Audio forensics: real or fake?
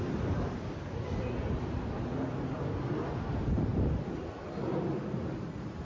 real